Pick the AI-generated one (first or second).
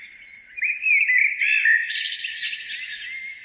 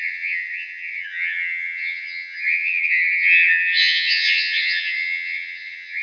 second